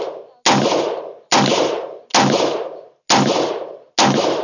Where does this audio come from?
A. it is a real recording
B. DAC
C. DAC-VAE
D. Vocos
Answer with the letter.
A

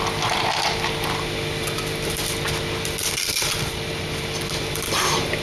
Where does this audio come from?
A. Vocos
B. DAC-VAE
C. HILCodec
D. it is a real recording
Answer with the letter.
D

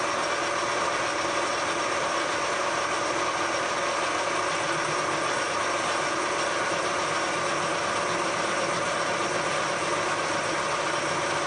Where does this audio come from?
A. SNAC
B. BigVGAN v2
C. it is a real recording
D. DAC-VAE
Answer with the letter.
C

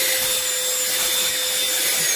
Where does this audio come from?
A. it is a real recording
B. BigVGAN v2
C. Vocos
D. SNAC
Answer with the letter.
A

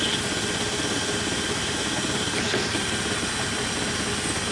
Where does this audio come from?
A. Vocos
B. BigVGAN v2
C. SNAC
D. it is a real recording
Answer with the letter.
D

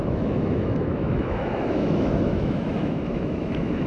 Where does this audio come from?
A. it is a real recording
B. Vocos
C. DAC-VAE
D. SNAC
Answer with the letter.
C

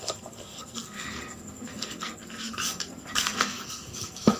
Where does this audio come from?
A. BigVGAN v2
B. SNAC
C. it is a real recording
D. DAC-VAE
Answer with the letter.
B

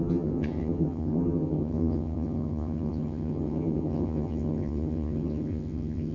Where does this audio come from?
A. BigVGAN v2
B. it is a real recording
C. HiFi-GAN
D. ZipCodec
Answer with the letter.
C